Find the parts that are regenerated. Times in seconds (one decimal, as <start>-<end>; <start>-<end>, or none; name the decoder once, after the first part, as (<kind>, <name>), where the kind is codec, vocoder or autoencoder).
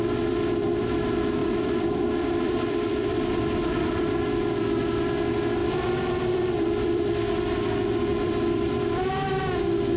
1.4-4.1 (vocoder, BigVGAN v2); 5.6-7.3; 8.1-9.1